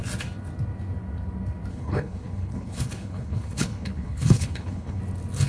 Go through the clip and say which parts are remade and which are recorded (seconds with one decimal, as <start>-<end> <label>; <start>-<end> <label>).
0.0-1.7 recorded; 1.7-5.0 remade; 5.0-5.5 recorded